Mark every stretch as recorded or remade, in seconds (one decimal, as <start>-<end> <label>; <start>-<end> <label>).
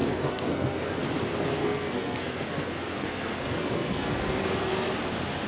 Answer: 0.0-1.0 remade; 1.0-1.6 recorded; 1.6-4.9 remade; 4.9-5.5 recorded